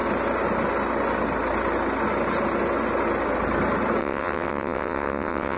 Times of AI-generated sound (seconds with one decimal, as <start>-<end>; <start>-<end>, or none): 4.0-5.6